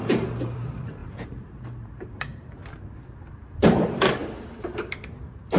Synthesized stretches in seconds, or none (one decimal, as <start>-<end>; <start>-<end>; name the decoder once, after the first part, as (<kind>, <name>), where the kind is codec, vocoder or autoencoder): 0.0-2.6 (vocoder, BigVGAN v2); 3.6-4.2; 4.9-5.6